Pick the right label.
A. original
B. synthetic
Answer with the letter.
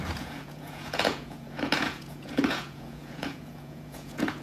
B